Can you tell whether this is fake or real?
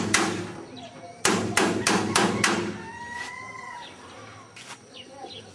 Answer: real